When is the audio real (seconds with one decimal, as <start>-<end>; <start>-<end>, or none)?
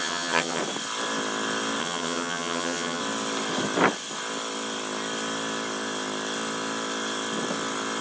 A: 0.6-1.8; 3.0-8.0